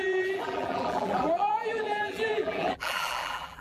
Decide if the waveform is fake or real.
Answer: fake